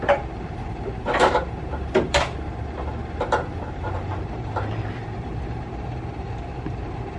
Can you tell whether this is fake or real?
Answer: fake